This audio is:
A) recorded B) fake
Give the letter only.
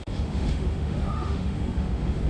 B